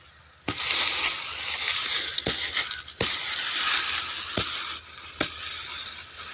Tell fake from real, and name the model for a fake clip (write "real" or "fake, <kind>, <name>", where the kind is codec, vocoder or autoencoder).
real